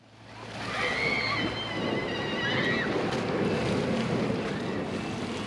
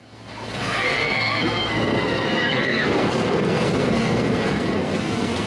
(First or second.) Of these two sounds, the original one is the first